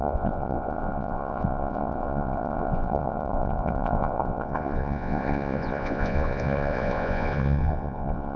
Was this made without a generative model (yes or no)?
no